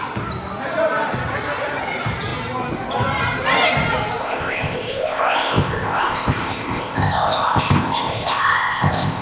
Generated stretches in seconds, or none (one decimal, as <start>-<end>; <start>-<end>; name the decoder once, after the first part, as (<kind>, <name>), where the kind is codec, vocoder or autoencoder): 4.2-9.2 (codec, ZipCodec)